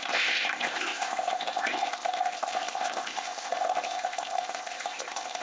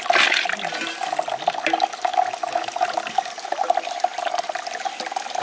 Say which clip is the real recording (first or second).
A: second